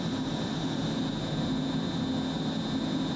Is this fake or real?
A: real